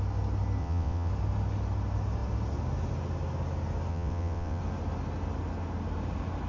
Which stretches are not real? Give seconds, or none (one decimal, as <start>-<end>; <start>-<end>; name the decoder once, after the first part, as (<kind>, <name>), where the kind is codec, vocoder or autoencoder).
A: 0.6-1.1 (vocoder, WaveNeXt); 3.9-4.6